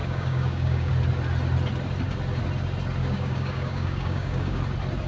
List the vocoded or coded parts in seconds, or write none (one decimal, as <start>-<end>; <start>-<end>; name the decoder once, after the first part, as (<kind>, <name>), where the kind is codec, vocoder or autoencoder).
0.0-0.9 (codec, DAC); 3.0-4.6